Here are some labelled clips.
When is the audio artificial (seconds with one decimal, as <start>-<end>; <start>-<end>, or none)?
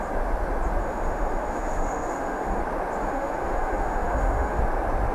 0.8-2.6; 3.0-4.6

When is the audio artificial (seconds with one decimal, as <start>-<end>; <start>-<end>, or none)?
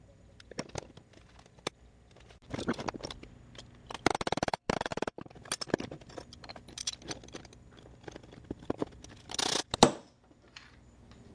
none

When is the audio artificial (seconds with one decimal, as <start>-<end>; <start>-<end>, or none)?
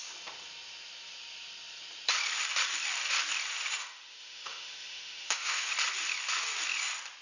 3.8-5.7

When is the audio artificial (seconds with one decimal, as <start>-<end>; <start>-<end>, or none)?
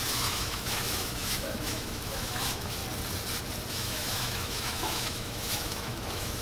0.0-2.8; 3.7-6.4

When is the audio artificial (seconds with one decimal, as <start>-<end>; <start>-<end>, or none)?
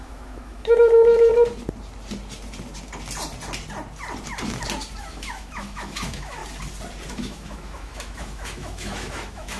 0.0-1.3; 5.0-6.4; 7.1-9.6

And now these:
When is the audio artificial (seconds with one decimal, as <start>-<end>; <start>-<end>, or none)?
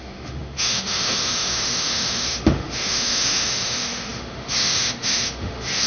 0.0-5.9